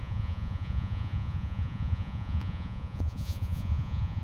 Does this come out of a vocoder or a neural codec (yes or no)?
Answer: yes